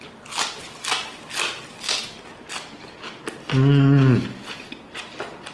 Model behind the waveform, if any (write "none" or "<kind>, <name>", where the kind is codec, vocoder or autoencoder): none